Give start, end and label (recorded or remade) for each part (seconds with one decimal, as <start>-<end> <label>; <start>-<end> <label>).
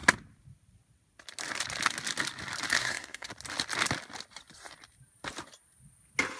0.0-2.8 recorded; 2.8-3.3 remade; 3.3-6.4 recorded